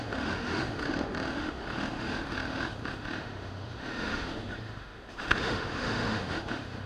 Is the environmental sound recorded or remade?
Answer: remade